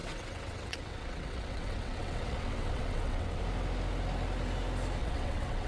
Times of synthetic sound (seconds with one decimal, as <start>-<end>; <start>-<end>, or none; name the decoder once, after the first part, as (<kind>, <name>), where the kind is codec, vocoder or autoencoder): 0.0-3.4 (vocoder, WaveNeXt); 5.0-5.7